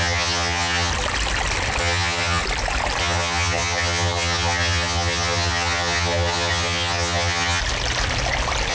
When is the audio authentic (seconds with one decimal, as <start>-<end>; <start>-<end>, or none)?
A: 0.9-1.8; 2.4-3.0; 7.6-8.7